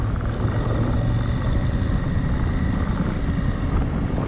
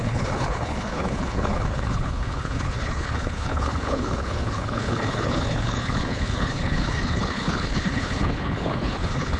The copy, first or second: second